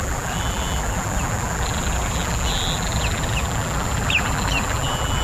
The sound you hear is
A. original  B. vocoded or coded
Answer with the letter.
B